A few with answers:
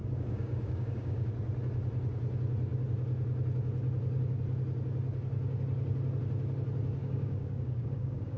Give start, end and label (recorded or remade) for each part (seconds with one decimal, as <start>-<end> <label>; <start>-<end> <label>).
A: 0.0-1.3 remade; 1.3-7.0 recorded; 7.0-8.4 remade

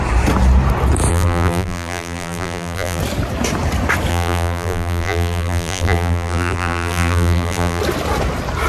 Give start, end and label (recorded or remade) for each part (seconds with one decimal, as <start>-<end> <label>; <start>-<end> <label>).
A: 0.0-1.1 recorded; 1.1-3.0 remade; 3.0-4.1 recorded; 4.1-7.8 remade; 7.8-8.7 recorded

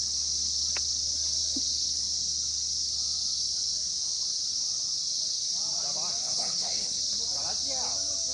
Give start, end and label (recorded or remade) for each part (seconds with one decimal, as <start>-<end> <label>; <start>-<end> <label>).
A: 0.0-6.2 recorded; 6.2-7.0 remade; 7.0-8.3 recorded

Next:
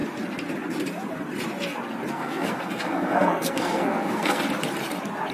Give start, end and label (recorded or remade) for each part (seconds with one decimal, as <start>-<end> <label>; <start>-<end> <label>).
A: 0.0-2.1 recorded; 2.1-4.4 remade; 4.4-5.3 recorded